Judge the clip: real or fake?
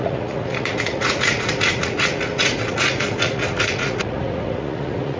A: fake